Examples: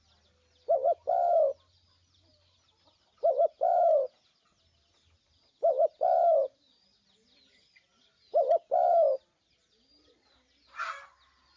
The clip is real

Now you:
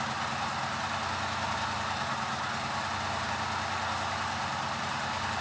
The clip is real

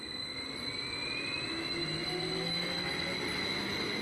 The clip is real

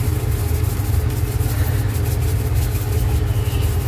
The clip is real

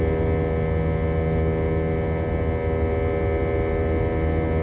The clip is real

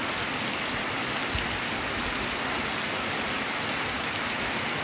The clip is real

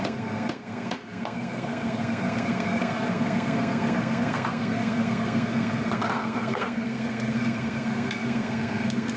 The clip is fake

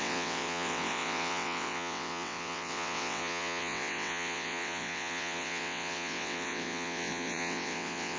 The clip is fake